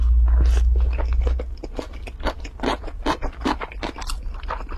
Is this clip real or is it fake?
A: real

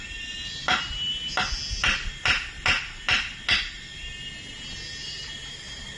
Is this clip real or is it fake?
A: real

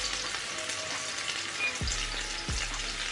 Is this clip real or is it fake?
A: real